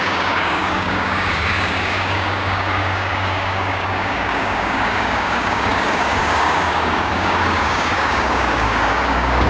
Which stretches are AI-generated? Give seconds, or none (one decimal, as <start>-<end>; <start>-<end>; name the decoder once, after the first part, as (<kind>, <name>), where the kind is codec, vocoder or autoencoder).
0.0-9.5 (codec, DAC)